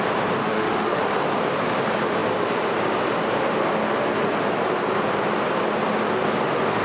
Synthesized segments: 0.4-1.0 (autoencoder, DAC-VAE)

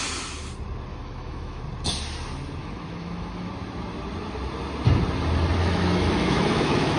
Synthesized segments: 0.9-1.6 (autoencoder, DAC-VAE); 2.6-3.5; 5.6-7.0

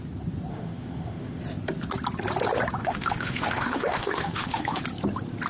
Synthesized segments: 0.5-1.4 (autoencoder, DAC-VAE); 2.8-4.8